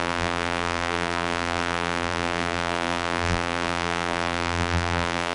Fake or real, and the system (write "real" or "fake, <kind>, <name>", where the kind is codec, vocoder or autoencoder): fake, vocoder, BigVGAN v2